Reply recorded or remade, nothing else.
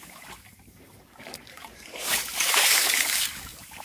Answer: remade